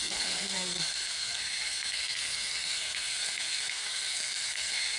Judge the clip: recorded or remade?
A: remade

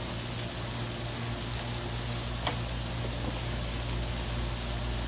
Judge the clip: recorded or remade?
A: recorded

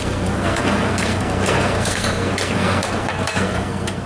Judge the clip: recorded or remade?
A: remade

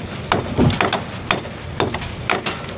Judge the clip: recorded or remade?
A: recorded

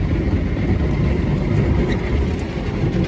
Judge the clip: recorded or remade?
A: recorded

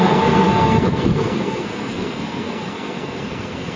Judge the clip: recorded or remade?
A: remade